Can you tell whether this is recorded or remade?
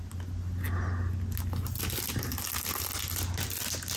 recorded